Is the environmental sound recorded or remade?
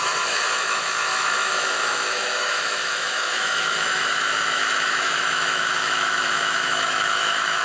remade